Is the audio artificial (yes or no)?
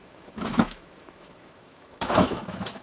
yes